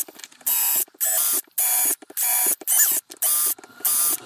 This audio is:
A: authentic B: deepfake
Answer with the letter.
A